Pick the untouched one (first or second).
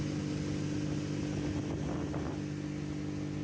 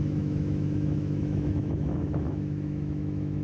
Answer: first